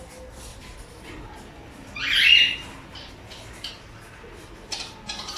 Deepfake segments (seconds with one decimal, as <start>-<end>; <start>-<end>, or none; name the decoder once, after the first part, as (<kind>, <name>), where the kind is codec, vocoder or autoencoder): 0.5-3.7 (vocoder, BigVGAN v2)